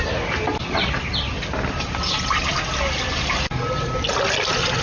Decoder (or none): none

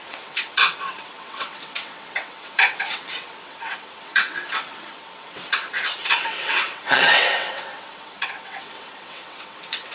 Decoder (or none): vocoder, WaveNeXt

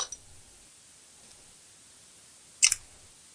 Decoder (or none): none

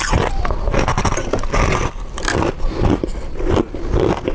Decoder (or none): none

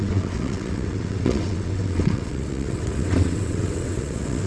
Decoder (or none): vocoder, WaveNeXt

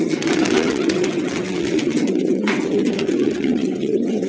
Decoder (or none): vocoder, WaveNeXt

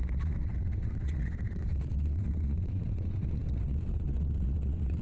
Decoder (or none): vocoder, WaveNeXt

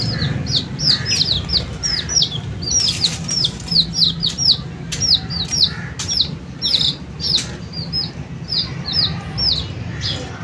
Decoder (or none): none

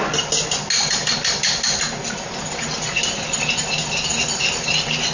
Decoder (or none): none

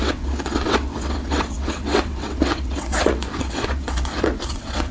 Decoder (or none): vocoder, WaveNeXt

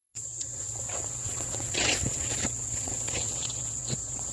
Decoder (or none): vocoder, WaveNeXt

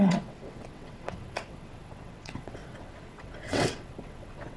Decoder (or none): vocoder, WaveNeXt